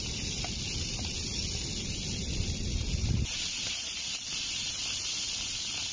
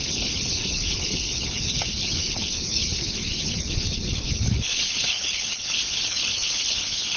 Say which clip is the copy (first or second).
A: second